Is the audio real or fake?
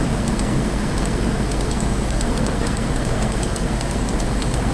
fake